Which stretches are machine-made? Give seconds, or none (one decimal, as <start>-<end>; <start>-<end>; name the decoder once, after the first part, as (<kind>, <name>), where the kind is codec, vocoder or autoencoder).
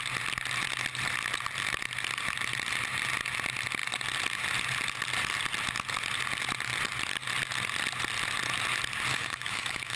9.1-10.0 (autoencoder, DAC-VAE)